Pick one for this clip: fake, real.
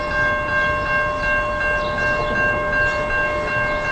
real